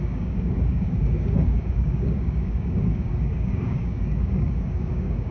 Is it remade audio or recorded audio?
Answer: remade